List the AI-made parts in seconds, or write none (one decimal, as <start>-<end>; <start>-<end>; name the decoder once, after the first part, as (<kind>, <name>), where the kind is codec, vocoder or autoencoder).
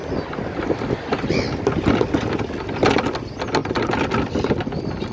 3.6-4.4 (vocoder, BigVGAN v2)